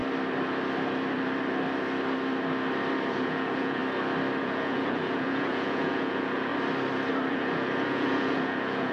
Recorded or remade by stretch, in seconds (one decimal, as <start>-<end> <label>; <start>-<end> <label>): 0.0-3.1 recorded; 3.1-3.8 remade; 3.8-4.4 recorded; 4.4-6.5 remade; 6.5-7.3 recorded; 7.3-8.9 remade